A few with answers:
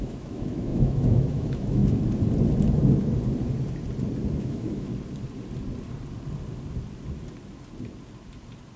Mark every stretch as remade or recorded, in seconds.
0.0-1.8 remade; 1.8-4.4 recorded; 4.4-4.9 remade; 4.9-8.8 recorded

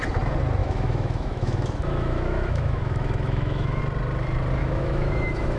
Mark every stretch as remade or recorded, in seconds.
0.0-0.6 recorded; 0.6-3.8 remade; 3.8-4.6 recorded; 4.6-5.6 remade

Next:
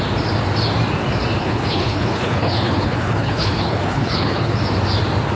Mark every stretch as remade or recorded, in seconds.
0.0-1.4 recorded; 1.4-4.6 remade; 4.6-5.4 recorded

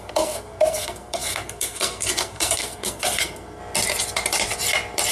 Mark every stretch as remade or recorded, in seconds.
0.0-3.6 remade; 3.6-5.1 recorded

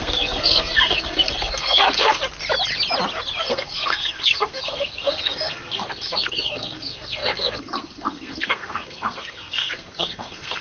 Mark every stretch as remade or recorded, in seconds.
0.0-2.2 remade; 2.2-3.4 recorded; 3.4-10.6 remade

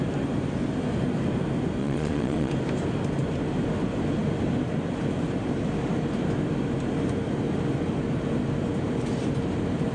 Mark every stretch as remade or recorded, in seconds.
0.0-1.8 recorded; 1.8-2.5 remade; 2.5-9.9 recorded

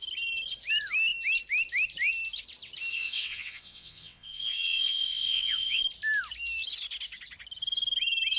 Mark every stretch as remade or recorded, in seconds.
0.0-2.9 recorded; 2.9-5.8 remade; 5.8-8.4 recorded